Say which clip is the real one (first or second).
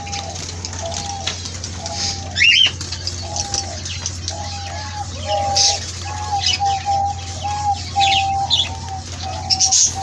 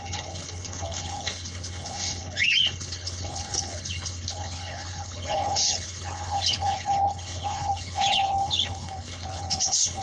first